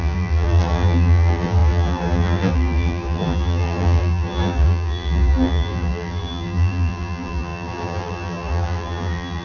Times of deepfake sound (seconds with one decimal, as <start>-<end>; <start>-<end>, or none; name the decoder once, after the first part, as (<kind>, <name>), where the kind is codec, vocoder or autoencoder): 0.0-9.4 (vocoder, BigVGAN v2)